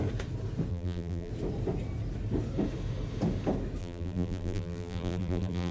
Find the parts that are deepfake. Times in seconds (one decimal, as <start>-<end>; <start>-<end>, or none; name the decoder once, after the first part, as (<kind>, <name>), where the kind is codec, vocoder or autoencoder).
0.7-1.3 (vocoder, BigVGAN v2); 3.8-5.7